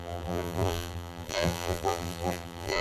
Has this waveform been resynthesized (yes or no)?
yes